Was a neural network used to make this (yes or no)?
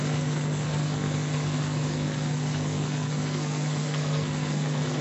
yes